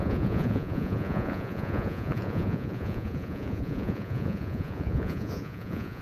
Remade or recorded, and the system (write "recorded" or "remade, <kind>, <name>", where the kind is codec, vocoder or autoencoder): remade, vocoder, Vocos